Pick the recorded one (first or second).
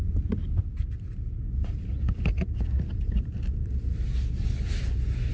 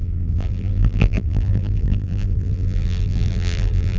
first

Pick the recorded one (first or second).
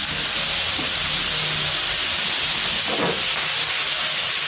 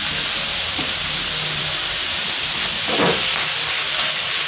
first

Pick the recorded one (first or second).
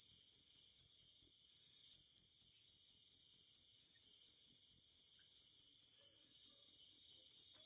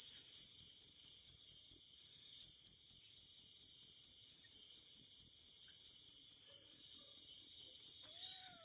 first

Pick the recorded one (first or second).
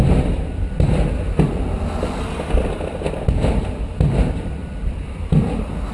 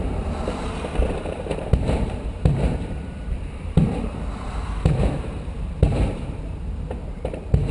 first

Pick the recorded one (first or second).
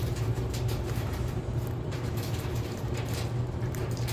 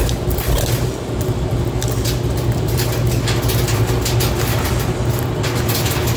second